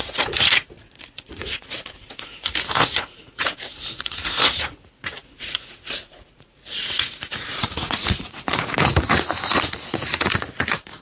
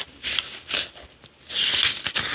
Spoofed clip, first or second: first